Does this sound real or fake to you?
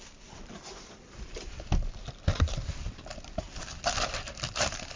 fake